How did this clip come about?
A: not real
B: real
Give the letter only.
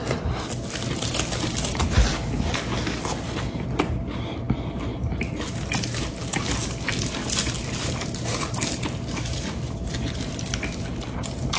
B